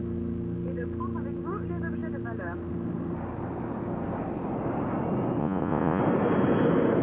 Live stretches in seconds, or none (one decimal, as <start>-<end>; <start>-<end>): 0.0-5.4; 6.0-7.0